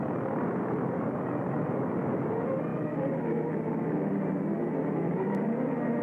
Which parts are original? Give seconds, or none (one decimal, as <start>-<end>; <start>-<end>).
0.0-6.0